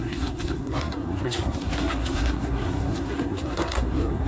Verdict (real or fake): fake